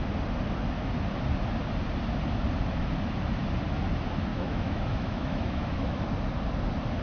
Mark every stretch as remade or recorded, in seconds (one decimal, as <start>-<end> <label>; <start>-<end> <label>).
0.0-4.3 recorded; 4.3-6.1 remade; 6.1-7.0 recorded